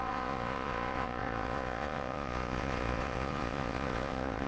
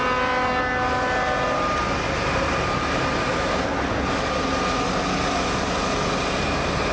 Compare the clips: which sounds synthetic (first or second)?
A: first